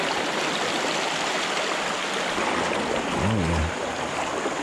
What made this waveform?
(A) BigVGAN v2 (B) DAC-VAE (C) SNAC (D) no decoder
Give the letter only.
D